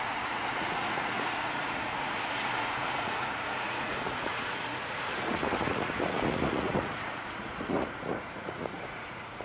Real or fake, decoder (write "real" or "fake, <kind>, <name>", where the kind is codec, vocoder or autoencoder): fake, vocoder, Vocos